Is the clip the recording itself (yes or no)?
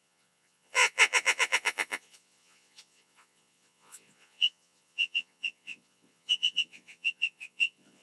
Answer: no